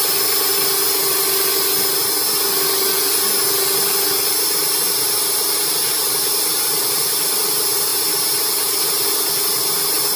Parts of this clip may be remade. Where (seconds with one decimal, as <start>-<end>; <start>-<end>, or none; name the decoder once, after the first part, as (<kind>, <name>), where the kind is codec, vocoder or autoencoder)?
none